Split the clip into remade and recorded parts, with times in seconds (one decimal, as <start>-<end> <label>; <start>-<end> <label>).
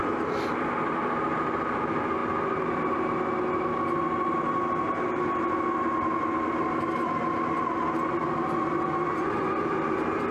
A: 0.0-10.3 recorded